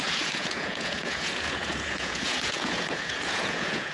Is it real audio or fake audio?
fake